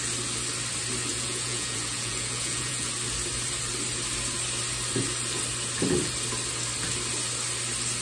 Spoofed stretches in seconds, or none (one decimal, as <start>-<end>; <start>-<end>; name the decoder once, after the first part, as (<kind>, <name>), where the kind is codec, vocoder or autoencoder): 1.1-2.9 (vocoder, Vocos)